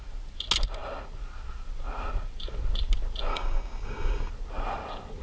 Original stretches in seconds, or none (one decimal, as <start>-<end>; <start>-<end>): 0.0-3.3; 4.3-5.2